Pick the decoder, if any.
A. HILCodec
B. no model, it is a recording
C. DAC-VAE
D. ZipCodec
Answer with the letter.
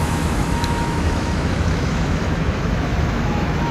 C